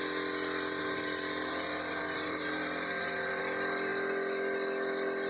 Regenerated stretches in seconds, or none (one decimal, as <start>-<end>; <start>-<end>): 0.8-3.4